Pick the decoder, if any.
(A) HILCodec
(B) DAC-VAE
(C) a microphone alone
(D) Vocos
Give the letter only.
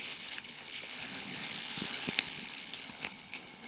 A